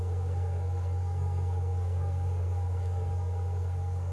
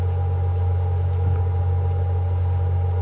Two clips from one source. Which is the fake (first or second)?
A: first